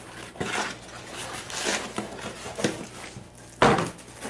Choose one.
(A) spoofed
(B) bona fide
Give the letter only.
B